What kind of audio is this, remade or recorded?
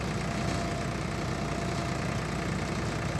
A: recorded